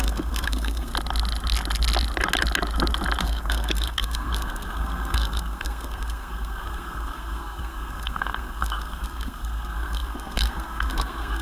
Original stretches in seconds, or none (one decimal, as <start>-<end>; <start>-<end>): 0.9-3.2